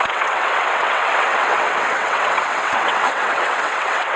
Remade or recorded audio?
remade